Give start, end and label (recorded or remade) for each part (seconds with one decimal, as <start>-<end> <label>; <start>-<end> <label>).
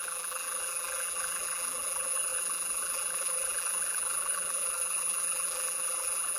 0.0-6.4 remade